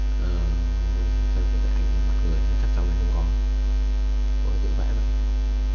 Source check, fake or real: real